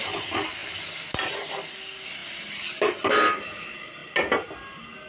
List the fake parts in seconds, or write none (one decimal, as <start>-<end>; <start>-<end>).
none

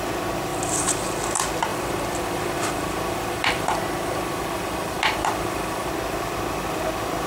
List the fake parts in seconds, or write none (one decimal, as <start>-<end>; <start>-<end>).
0.5-1.2; 1.7-5.9

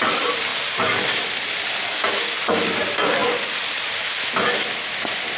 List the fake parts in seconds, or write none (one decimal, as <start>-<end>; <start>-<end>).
0.0-0.5; 2.0-3.2

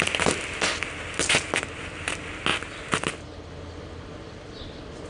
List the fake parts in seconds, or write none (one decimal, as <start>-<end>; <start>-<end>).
none

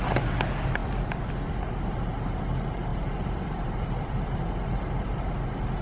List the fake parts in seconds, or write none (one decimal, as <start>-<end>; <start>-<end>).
0.8-1.6; 2.9-5.8